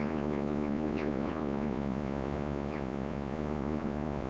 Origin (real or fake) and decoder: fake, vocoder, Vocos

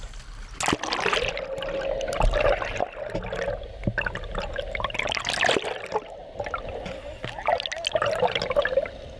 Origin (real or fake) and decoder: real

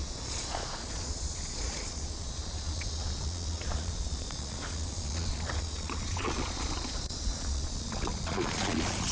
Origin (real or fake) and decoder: fake, vocoder, Vocos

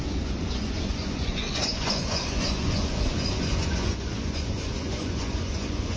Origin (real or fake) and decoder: fake, vocoder, Vocos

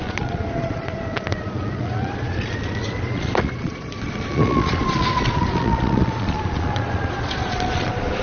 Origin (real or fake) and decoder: fake, vocoder, Vocos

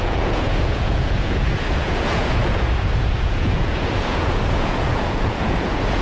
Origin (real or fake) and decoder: fake, vocoder, Vocos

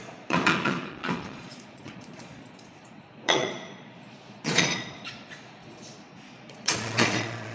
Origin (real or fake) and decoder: fake, vocoder, Vocos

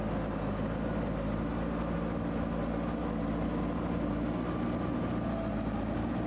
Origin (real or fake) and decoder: real